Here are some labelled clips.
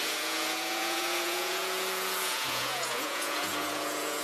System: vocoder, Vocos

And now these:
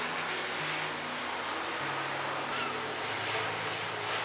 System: none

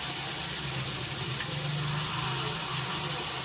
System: none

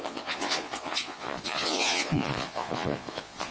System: vocoder, Vocos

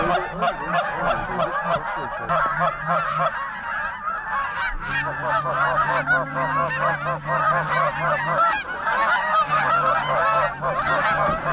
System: none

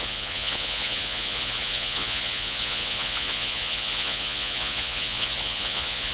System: vocoder, Vocos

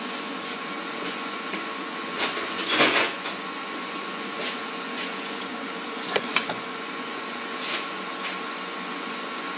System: vocoder, Vocos